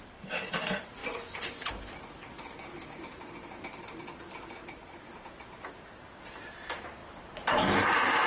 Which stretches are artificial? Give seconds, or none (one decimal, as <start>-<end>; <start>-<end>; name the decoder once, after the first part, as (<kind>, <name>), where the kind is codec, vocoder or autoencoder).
0.0-8.3 (vocoder, BigVGAN v2)

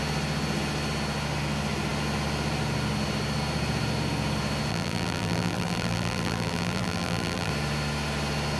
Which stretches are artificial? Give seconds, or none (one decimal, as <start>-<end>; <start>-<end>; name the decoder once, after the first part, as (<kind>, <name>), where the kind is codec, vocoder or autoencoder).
4.7-7.5 (vocoder, BigVGAN v2)

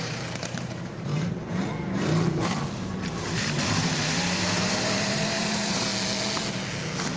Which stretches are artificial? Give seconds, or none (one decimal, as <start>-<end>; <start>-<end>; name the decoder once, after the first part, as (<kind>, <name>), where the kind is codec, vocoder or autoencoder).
0.0-5.9 (vocoder, BigVGAN v2)

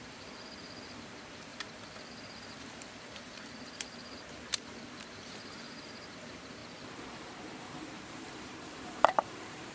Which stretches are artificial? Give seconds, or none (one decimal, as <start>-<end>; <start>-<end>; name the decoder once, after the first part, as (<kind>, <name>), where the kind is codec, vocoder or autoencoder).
0.0-6.6 (vocoder, BigVGAN v2); 7.9-9.7

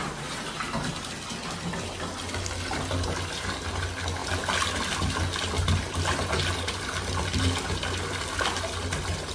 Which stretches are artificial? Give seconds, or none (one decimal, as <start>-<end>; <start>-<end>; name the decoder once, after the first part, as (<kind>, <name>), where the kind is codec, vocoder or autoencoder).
none